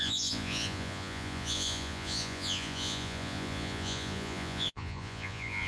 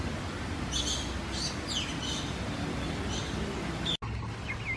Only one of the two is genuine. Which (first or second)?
second